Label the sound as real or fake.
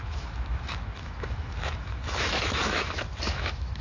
fake